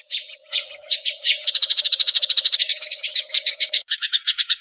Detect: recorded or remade remade